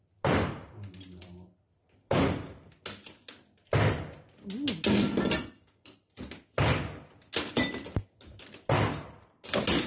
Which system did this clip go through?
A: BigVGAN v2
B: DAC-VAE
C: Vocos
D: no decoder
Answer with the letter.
D